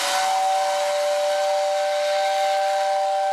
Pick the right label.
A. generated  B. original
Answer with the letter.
B